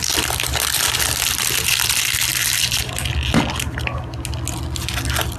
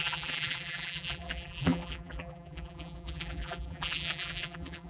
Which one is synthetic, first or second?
second